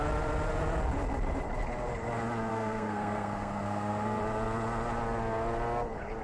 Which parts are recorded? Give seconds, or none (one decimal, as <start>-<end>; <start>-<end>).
0.0-2.5; 4.2-6.2